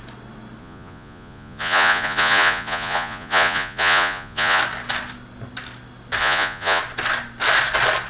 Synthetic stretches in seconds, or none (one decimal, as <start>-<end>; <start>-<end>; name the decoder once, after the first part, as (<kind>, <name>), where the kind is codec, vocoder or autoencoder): 0.6-4.6 (vocoder, Vocos); 6.2-6.8